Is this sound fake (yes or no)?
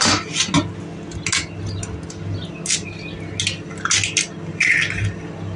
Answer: no